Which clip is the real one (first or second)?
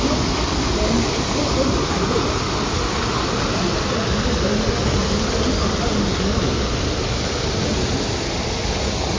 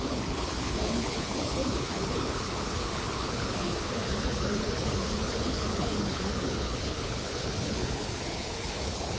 first